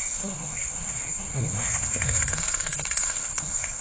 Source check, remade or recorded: remade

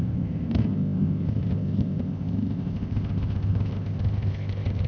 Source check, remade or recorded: remade